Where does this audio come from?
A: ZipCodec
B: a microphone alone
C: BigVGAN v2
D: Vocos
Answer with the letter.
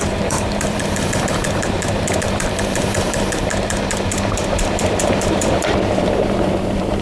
C